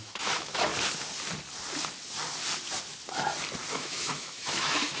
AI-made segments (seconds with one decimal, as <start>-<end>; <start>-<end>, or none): 0.0-0.7; 3.7-5.0